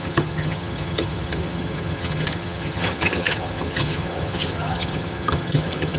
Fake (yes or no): yes